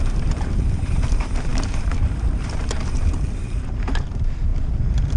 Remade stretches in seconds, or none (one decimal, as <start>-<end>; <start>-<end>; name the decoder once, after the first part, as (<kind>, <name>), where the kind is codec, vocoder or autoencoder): 0.0-5.2 (vocoder, BigVGAN v2)